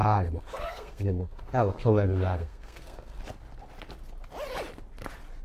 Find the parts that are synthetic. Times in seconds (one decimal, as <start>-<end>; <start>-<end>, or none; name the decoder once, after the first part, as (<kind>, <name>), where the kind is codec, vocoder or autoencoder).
0.0-3.2 (codec, SNAC)

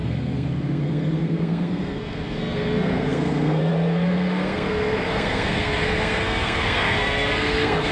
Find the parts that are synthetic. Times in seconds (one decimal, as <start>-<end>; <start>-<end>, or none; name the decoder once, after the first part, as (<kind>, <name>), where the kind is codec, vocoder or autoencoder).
0.0-7.9 (codec, SNAC)